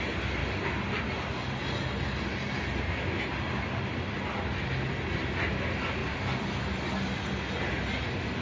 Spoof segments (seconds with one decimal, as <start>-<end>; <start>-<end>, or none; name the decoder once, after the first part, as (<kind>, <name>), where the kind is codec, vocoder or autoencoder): 6.0-6.6 (vocoder, BigVGAN v2)